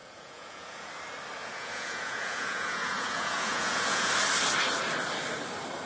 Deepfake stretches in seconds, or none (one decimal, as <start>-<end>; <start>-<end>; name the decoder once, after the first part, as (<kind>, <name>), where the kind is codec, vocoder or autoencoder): 0.0-0.9 (vocoder, Vocos); 1.4-4.1